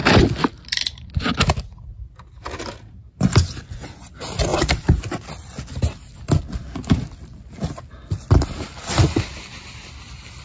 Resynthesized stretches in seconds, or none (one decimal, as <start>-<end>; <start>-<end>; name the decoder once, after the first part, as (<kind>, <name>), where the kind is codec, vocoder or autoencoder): none